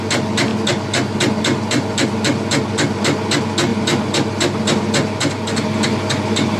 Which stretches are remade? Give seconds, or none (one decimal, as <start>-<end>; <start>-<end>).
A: none